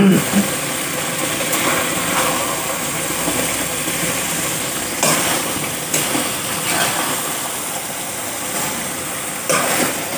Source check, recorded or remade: remade